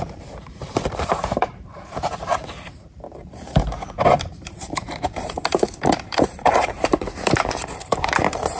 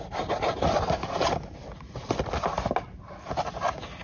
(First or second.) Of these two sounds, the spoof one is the first